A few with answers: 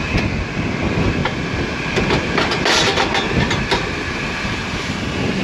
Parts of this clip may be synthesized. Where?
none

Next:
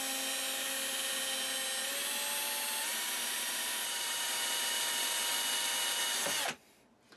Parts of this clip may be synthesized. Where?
2.9-4.3